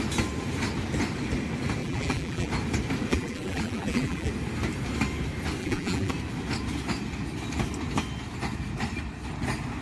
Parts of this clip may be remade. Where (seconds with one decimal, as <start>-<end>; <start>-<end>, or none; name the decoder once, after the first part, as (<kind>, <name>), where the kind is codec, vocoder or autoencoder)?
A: 1.8-2.5 (vocoder, BigVGAN v2); 3.1-4.3; 5.6-6.1